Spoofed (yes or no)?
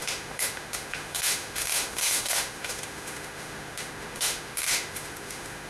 yes